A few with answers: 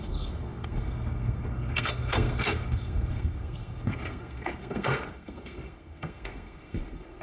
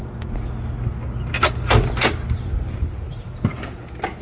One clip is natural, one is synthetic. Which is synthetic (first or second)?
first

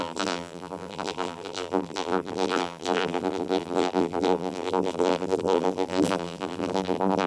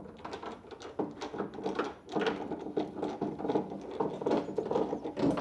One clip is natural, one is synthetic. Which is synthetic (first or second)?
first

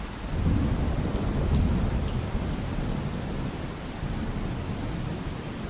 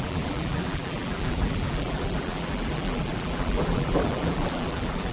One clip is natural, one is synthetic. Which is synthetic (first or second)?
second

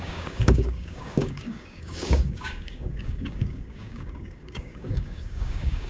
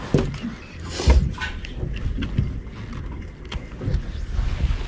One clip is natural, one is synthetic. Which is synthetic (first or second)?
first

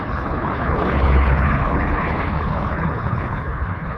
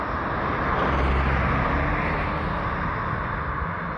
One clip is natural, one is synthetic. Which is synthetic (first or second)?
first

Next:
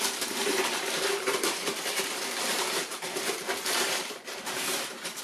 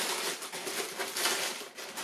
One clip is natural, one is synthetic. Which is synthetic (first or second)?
first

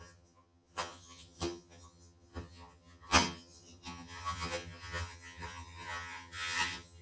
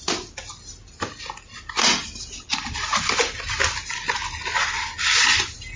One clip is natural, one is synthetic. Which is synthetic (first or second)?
first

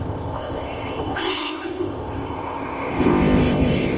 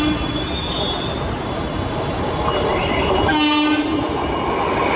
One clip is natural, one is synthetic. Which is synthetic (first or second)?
first